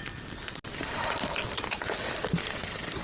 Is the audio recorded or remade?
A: recorded